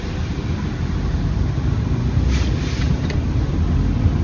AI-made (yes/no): no